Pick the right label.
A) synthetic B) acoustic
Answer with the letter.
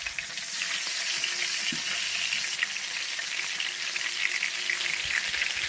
B